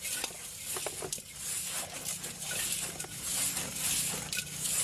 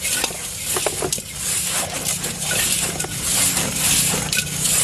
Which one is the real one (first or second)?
first